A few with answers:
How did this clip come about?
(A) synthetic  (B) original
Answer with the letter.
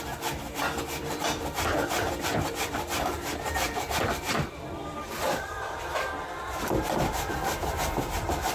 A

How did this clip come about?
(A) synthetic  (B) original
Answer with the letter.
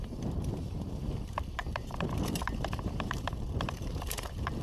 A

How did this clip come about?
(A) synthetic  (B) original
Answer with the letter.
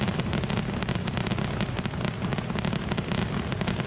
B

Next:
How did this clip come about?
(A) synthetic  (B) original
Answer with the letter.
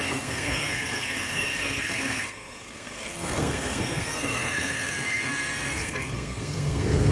A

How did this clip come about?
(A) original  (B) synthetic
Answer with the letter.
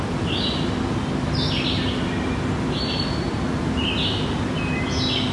A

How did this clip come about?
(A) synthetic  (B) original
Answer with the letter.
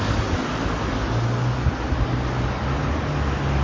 B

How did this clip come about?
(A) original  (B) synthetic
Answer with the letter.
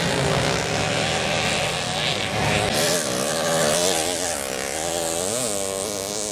A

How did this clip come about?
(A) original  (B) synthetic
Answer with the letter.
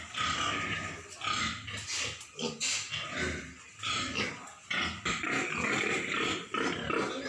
A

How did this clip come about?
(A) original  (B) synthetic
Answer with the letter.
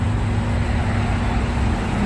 A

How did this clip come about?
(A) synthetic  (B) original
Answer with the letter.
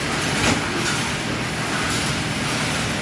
B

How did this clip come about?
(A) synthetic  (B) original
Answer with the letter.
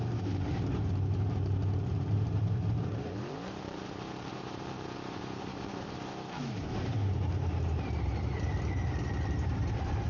A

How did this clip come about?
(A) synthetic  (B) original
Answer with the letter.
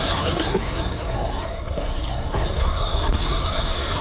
A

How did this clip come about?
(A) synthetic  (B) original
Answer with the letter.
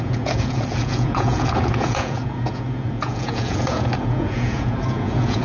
A